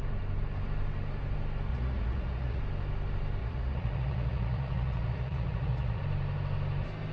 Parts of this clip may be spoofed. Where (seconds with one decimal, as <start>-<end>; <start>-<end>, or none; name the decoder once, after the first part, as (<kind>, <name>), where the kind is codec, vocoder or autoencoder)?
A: 1.7-2.6 (vocoder, Vocos); 3.4-6.0